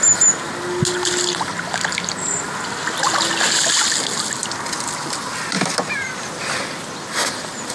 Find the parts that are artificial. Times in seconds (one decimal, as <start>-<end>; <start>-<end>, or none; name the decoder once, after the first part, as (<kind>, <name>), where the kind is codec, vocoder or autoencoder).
4.4-5.6 (vocoder, BigVGAN v2)